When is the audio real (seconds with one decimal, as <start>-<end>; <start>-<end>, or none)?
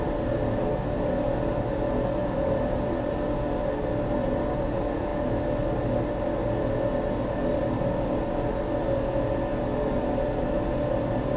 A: 0.0-11.4